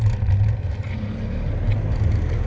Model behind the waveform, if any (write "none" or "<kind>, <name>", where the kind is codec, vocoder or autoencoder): none